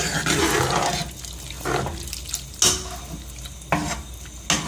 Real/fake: real